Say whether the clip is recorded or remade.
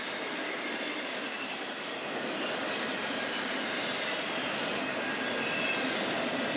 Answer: recorded